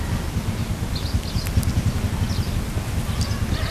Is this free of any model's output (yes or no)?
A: yes